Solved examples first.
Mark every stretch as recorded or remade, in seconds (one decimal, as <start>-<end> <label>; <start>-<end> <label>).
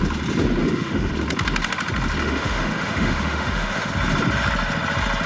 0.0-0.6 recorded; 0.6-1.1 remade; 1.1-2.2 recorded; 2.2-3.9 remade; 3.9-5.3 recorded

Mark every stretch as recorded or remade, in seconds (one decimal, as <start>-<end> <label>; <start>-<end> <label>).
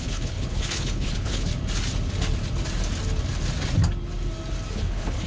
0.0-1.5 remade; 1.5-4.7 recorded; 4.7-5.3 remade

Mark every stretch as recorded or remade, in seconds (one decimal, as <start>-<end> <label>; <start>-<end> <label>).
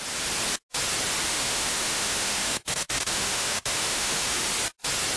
0.0-1.3 recorded; 1.3-4.4 remade; 4.4-5.2 recorded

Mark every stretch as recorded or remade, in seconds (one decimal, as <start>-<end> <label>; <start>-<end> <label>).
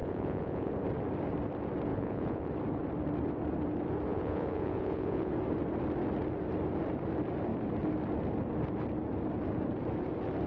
0.0-0.7 remade; 0.7-1.9 recorded; 1.9-2.5 remade; 2.5-4.1 recorded; 4.1-5.3 remade; 5.3-10.5 recorded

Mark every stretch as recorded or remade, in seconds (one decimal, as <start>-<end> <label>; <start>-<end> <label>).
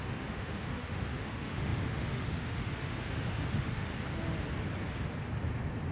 0.0-3.9 remade; 3.9-5.9 recorded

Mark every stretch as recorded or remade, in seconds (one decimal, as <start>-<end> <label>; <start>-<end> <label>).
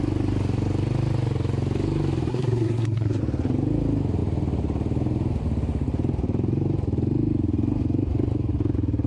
0.0-2.3 recorded; 2.3-3.2 remade; 3.2-9.1 recorded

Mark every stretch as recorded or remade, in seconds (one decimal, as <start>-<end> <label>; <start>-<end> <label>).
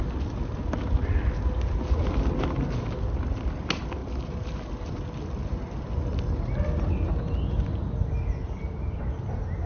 0.0-9.7 recorded